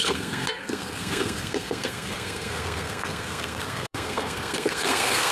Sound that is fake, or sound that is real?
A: fake